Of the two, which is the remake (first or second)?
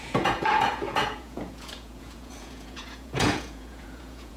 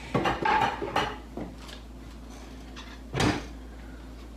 first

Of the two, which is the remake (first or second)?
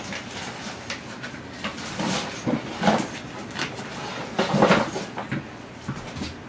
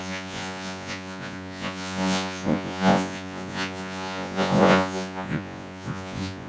second